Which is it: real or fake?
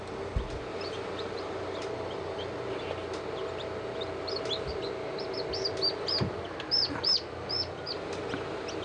real